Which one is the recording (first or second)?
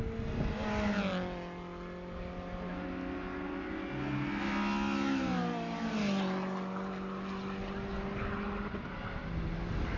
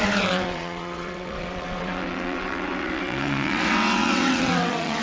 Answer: first